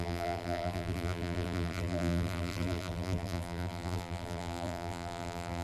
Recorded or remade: remade